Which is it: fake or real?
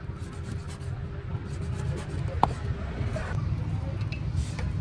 real